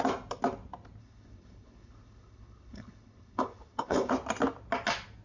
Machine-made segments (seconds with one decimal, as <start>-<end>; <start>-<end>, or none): 1.0-4.1